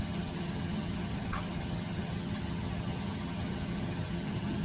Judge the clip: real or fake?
fake